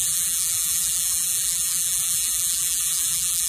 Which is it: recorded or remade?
remade